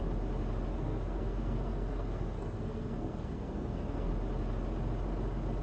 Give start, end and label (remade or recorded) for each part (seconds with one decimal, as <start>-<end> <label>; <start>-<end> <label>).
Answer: 0.0-0.7 recorded; 0.7-4.1 remade; 4.1-5.6 recorded